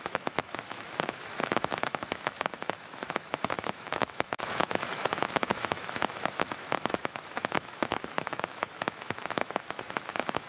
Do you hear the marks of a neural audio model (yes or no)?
yes